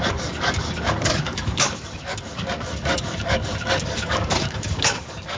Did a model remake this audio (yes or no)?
yes